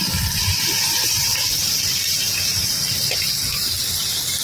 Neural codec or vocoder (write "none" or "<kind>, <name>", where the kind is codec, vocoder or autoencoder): none